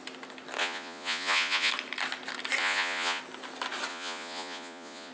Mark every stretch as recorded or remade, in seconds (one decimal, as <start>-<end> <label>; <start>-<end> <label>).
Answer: 0.0-0.6 recorded; 0.6-1.7 remade; 1.7-2.6 recorded; 2.6-3.2 remade; 3.2-3.9 recorded; 3.9-5.1 remade